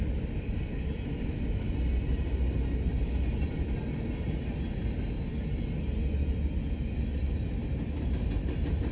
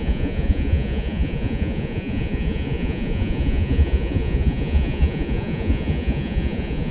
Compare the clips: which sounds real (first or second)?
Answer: first